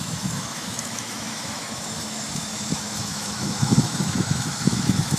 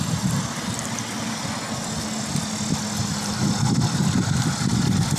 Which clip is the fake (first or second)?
first